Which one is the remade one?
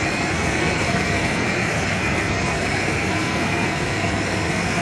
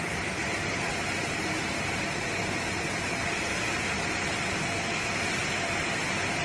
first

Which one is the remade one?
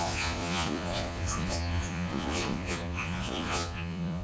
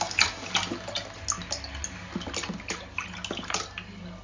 first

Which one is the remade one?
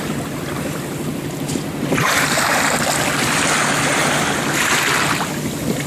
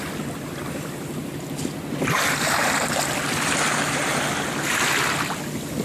first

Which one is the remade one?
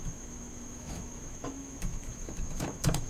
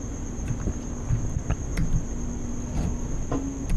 first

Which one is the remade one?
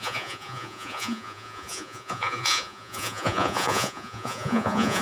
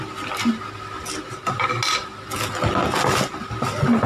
first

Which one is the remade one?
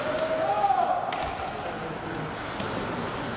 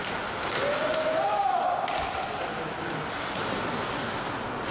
second